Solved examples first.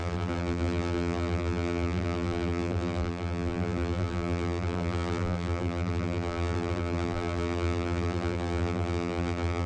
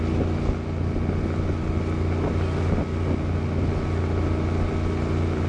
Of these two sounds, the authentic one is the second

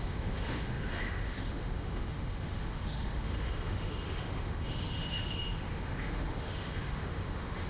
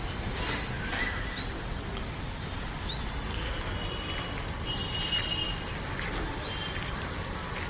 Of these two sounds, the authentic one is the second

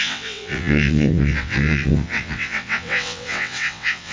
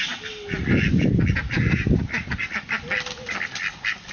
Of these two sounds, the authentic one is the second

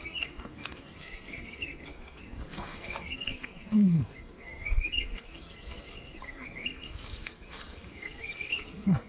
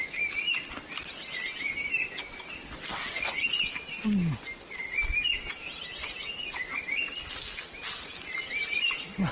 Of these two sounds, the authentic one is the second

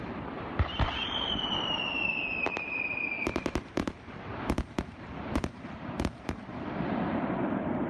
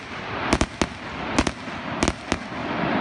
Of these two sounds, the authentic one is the second